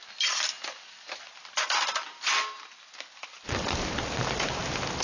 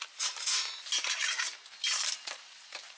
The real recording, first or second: first